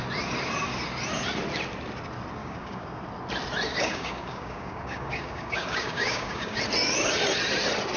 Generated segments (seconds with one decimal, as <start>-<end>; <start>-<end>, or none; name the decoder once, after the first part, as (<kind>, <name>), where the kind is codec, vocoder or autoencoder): 2.4-3.0 (codec, DAC); 3.7-6.6